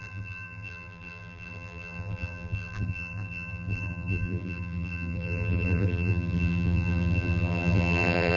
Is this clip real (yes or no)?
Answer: no